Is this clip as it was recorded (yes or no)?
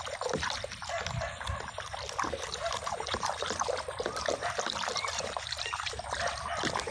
no